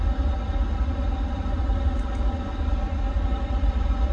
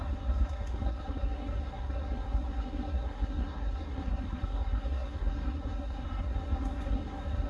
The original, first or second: first